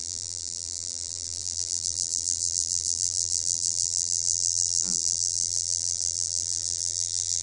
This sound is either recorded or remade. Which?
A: remade